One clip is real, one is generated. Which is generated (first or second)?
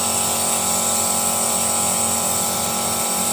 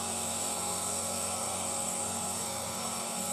second